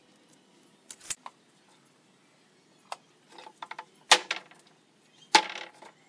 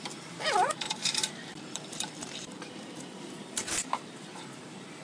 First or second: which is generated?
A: second